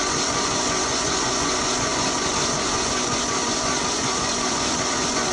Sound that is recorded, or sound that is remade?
remade